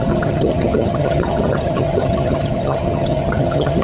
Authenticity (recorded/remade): remade